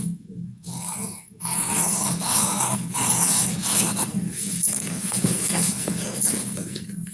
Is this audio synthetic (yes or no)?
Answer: yes